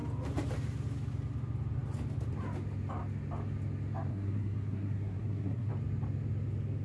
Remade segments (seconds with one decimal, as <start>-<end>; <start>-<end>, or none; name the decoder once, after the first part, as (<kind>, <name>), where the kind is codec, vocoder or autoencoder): 4.1-5.7 (codec, SNAC)